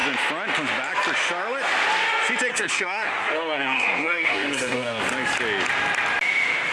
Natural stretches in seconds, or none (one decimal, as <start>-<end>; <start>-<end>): 0.0-2.5; 5.0-6.7